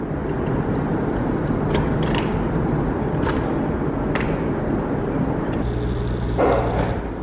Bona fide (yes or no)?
yes